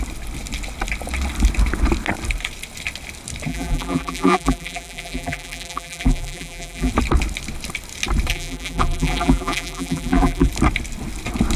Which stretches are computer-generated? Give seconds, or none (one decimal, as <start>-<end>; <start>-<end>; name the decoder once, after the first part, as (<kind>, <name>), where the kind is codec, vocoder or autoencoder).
3.5-6.9 (vocoder, BigVGAN v2); 8.3-10.5